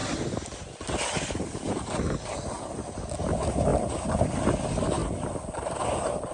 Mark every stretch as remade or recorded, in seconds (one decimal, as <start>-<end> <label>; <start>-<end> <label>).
0.0-6.3 recorded